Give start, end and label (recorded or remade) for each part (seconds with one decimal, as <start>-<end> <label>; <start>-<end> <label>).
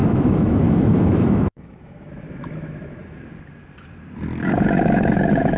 0.0-3.2 remade; 3.2-4.4 recorded; 4.4-5.6 remade